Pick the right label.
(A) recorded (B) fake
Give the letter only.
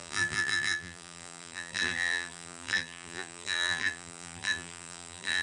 B